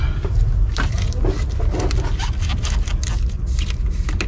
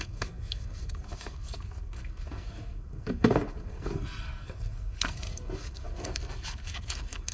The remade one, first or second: second